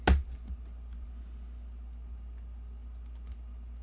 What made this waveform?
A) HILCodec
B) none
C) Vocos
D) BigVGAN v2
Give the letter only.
B